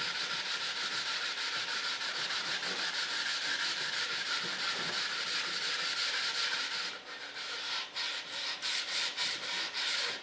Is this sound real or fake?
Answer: fake